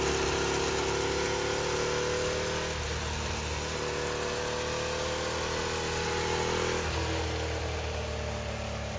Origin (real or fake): real